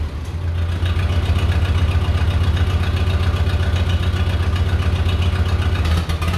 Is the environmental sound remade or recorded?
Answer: recorded